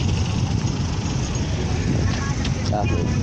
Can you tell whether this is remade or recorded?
recorded